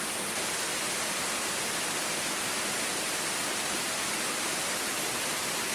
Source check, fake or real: real